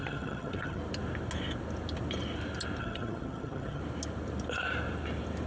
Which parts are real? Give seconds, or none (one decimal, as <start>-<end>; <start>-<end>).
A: 0.8-2.8; 3.8-5.5